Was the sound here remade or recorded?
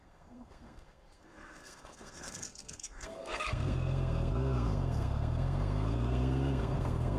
remade